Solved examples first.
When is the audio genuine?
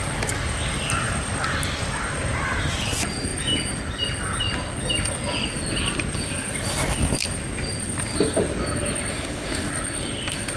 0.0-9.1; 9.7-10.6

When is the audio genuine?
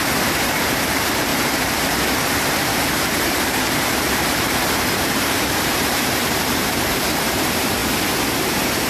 7.8-8.9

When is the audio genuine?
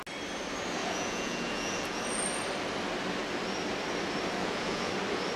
0.0-0.8; 2.0-4.4; 4.9-5.4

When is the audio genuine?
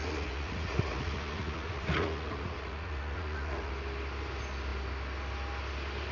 3.7-6.1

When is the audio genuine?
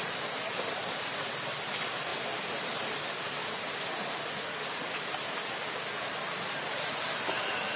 0.0-7.8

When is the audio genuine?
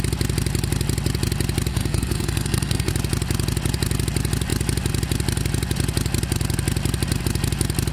0.0-1.7; 2.9-7.9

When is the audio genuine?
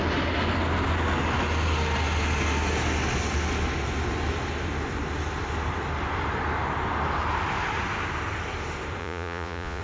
0.0-9.0